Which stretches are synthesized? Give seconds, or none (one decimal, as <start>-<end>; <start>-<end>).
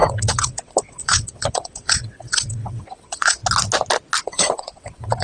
0.0-3.4; 4.2-5.2